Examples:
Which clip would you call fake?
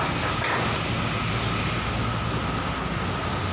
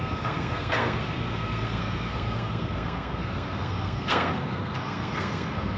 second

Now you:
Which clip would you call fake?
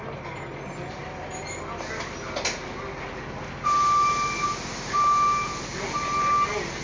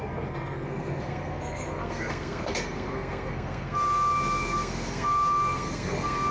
second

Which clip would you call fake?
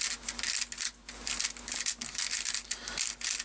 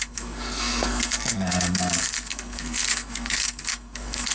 second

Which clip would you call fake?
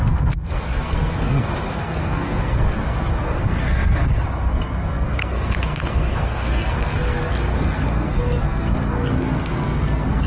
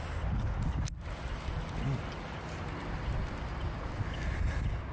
first